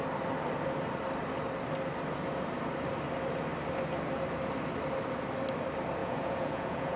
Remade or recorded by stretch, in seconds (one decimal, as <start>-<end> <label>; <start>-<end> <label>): 0.0-6.0 recorded; 6.0-7.0 remade